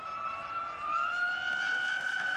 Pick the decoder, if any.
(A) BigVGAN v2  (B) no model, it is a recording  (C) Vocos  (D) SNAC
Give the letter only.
B